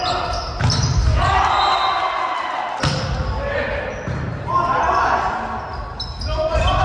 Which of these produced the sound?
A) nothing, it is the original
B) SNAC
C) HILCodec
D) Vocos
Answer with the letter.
A